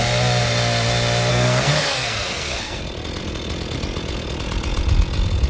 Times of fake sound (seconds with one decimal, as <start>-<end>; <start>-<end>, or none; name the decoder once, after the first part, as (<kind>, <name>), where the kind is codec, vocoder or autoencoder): 1.3-2.8 (codec, SNAC)